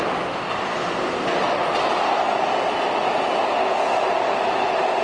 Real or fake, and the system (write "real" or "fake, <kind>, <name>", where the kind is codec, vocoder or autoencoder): real